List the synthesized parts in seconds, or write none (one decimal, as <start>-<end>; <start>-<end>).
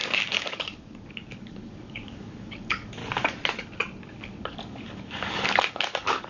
0.0-3.0; 4.0-6.3